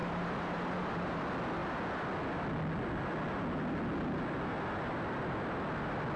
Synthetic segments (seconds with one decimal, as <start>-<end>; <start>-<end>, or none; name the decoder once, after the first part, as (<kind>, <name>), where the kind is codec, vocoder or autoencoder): 0.0-1.2 (vocoder, BigVGAN v2)